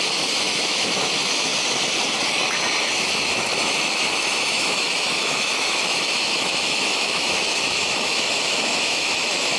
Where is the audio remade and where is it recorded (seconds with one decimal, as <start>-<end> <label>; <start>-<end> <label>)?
0.0-1.5 remade; 1.5-2.8 recorded; 2.8-9.6 remade

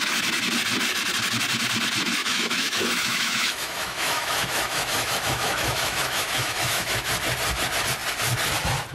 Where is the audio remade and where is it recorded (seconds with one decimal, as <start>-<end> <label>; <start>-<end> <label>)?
0.0-2.2 recorded; 2.2-7.1 remade; 7.1-8.9 recorded